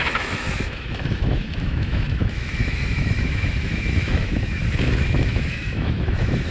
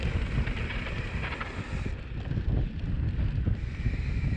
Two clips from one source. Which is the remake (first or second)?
first